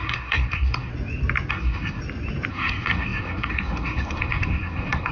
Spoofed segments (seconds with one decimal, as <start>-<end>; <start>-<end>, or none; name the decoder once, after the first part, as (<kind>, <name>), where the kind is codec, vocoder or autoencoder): 0.0-0.9 (codec, SNAC); 1.5-2.0; 2.5-5.1